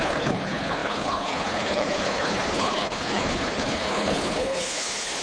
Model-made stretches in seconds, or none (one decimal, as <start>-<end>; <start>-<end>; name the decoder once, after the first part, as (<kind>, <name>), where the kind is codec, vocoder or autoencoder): 0.0-5.2 (codec, HILCodec)